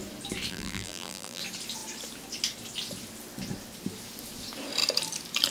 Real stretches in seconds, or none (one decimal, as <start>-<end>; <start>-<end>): 0.0-0.5; 1.4-5.5